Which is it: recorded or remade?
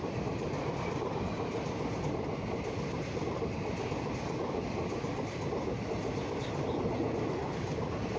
recorded